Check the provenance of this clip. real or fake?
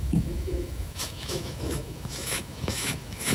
fake